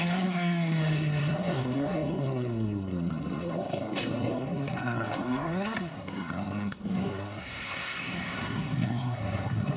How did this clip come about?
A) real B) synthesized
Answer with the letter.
B